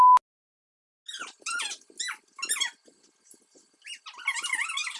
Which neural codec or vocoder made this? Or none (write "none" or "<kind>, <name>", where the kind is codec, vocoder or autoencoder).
none